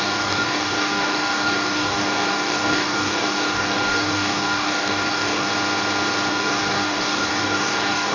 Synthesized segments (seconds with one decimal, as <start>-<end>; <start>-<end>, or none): 0.0-5.5; 6.3-8.1

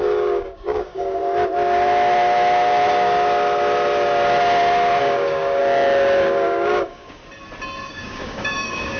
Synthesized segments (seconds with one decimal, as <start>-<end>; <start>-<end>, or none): 0.0-1.2; 5.0-5.6; 6.2-7.2; 7.9-9.0

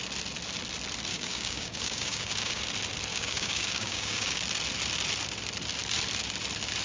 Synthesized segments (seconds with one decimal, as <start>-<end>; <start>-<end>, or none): 1.1-2.6; 3.1-4.4

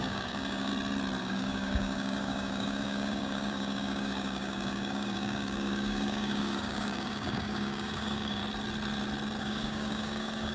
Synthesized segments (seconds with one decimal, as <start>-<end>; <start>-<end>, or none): 0.0-0.7; 1.2-8.4; 9.4-10.5

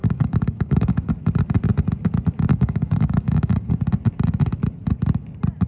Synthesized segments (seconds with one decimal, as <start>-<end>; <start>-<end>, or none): 0.0-1.1; 2.5-3.7